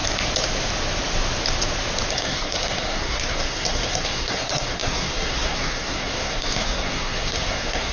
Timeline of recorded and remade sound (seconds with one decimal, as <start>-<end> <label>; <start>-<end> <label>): 0.0-2.1 recorded; 2.1-7.9 remade